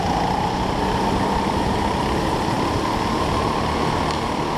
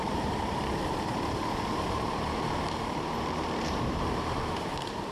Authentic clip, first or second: first